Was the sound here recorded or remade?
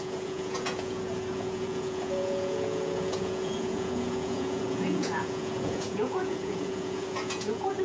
remade